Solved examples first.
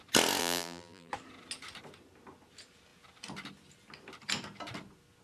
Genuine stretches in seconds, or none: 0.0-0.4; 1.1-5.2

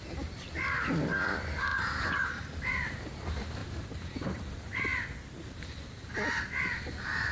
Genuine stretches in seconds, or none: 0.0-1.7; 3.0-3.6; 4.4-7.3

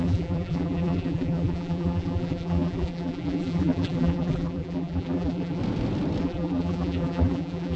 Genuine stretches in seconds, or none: 5.6-6.2

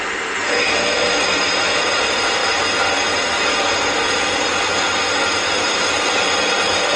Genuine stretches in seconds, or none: 0.0-7.0